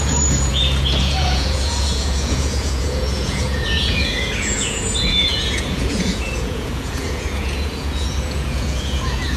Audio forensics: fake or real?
fake